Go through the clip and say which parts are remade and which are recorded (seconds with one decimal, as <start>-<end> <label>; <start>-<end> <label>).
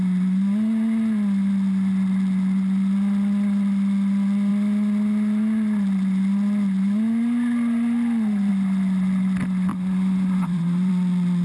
0.0-9.7 recorded; 9.7-10.9 remade; 10.9-11.4 recorded